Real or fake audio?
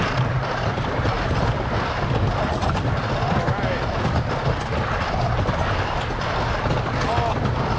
real